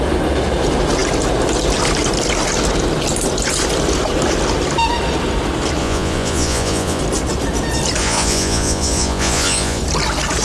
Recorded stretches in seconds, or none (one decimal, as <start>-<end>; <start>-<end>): 0.0-5.8; 7.0-8.0; 9.8-10.4